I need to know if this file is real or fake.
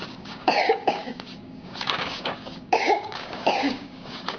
fake